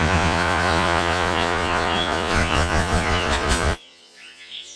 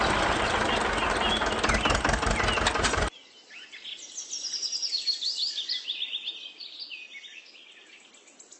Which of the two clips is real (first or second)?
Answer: second